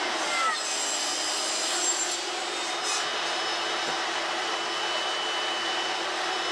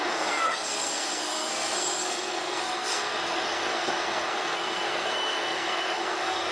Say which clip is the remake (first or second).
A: second